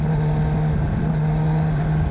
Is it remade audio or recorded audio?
recorded